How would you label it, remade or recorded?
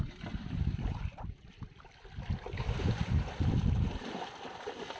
remade